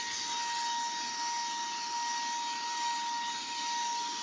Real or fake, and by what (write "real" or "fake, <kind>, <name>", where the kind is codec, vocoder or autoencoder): real